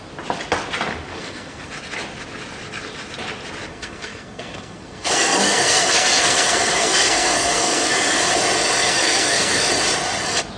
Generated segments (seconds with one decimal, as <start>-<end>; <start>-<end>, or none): 1.1-1.7; 3.7-8.3; 8.8-9.7